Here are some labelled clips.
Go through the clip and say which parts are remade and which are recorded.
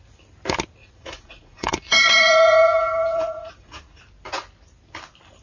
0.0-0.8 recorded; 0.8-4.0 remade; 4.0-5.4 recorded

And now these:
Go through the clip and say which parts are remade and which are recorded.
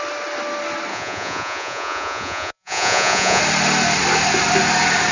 0.0-0.9 recorded; 0.9-3.4 remade; 3.4-5.1 recorded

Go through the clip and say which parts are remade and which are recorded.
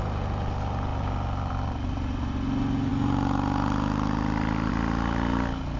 0.0-5.8 recorded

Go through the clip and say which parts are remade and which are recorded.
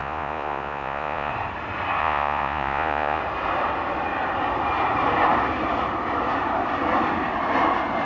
0.0-1.3 remade; 1.3-2.0 recorded; 2.0-3.2 remade; 3.2-8.1 recorded